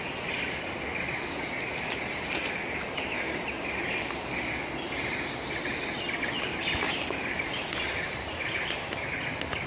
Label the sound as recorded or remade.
recorded